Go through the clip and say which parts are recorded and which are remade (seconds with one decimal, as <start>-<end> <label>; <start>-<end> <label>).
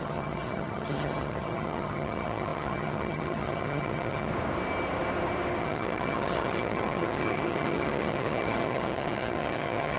0.0-4.3 remade; 4.3-5.6 recorded; 5.6-10.0 remade